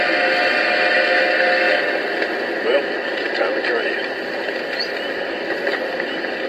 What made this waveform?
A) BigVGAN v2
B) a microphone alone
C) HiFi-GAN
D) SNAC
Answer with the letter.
B